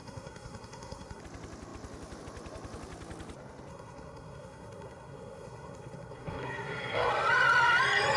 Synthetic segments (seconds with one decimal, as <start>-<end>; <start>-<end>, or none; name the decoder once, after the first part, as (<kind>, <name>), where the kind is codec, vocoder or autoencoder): 0.0-1.2 (codec, SNAC); 3.7-7.1